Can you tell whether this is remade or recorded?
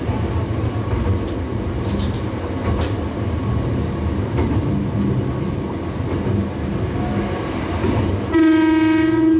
recorded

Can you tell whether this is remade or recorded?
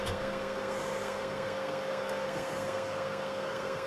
remade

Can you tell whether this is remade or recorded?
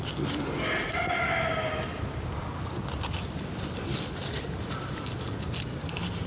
recorded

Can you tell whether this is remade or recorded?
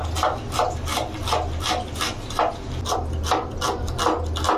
recorded